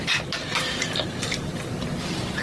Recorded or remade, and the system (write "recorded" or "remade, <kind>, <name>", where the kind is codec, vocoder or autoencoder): recorded